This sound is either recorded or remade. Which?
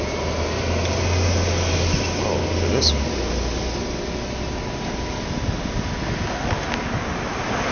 recorded